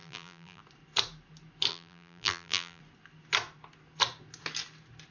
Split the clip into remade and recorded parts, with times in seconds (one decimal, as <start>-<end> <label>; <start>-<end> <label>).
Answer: 0.0-0.6 remade; 0.6-1.7 recorded; 1.7-2.8 remade; 2.8-5.1 recorded